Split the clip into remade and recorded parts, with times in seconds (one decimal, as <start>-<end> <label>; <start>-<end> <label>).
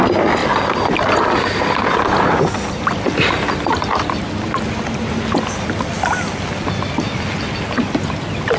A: 0.0-8.6 recorded